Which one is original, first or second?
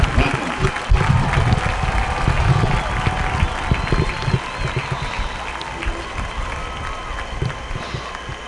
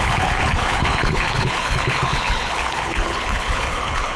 first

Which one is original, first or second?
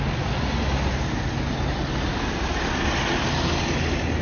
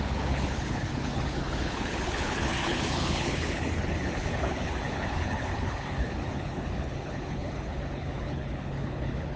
first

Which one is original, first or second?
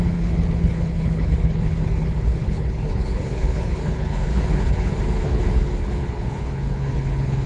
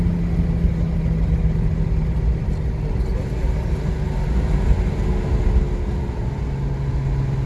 second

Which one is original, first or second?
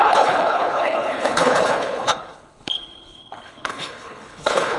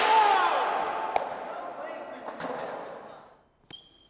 second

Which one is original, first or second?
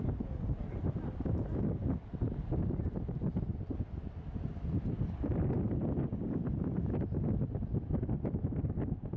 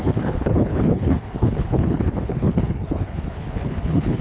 first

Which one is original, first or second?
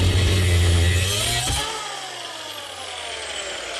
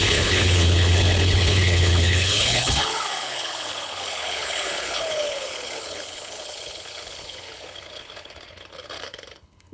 first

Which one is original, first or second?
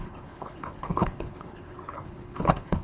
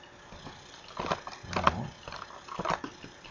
second